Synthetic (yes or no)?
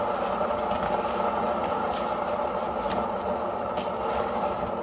no